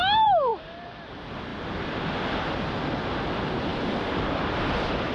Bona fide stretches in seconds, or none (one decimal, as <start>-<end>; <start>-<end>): 0.0-0.5; 1.1-3.7